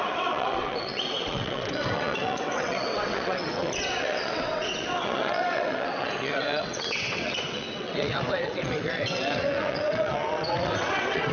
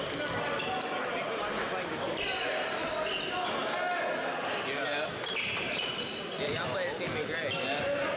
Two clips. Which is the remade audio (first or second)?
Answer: first